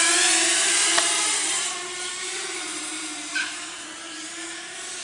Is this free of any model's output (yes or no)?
no